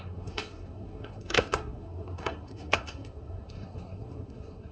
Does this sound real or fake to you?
fake